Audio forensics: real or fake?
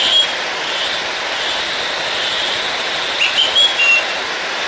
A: real